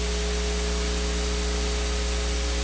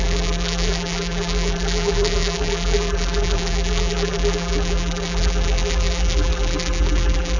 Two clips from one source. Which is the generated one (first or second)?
second